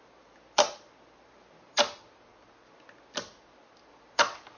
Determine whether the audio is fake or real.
real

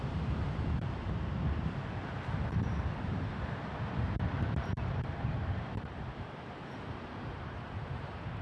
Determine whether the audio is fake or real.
fake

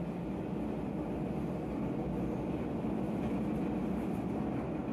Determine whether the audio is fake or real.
real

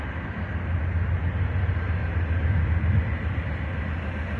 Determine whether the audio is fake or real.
real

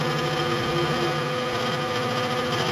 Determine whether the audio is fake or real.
real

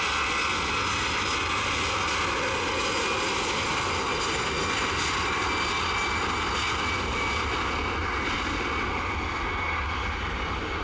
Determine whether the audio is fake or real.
real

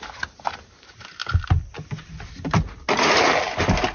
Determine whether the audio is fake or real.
real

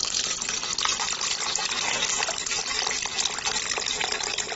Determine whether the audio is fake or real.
real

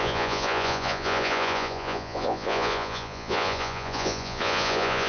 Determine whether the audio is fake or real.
fake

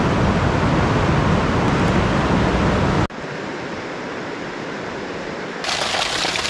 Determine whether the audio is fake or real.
real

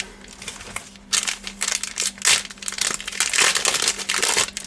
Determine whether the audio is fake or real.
real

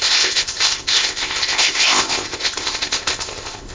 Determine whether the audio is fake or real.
fake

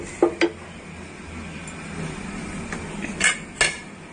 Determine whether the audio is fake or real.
real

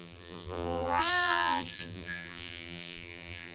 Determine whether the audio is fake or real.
fake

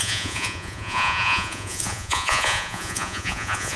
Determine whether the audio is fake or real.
fake